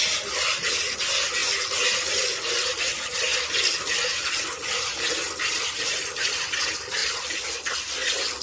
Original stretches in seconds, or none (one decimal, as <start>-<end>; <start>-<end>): 0.0-7.0; 7.6-8.4